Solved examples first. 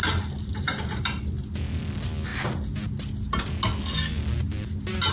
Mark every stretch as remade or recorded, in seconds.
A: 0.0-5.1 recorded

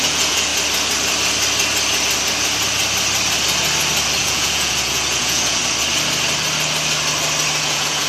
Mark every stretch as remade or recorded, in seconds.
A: 0.0-0.5 remade; 0.5-4.2 recorded; 4.2-5.6 remade; 5.6-7.6 recorded; 7.6-8.1 remade

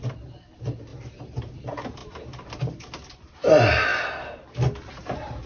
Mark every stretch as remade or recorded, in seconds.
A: 0.0-5.5 recorded

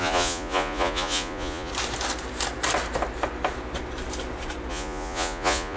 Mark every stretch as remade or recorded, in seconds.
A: 0.0-1.7 remade; 1.7-4.7 recorded; 4.7-5.8 remade

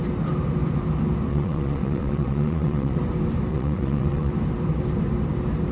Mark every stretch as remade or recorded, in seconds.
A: 0.0-1.3 recorded; 1.3-3.0 remade; 3.0-3.5 recorded; 3.5-4.3 remade; 4.3-5.7 recorded